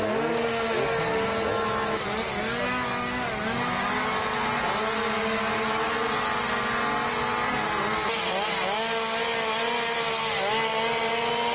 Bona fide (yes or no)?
yes